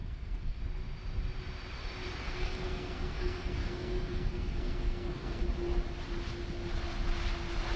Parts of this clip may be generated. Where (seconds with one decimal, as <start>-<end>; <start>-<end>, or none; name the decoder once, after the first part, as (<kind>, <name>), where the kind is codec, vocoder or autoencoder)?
0.0-0.6 (codec, SNAC); 2.2-5.4